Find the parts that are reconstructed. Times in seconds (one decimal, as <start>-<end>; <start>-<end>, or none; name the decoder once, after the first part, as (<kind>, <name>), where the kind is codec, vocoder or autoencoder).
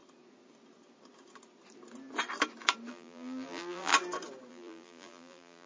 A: 2.9-3.9 (vocoder, BigVGAN v2); 4.5-5.7